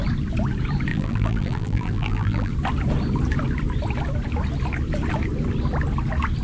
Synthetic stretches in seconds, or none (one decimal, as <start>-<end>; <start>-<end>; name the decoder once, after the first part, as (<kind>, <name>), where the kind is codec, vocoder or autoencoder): 0.9-2.5 (vocoder, BigVGAN v2)